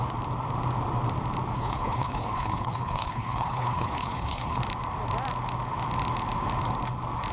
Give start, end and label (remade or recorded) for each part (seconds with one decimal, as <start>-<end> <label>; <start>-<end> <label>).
0.0-1.5 recorded; 1.5-4.6 remade; 4.6-7.3 recorded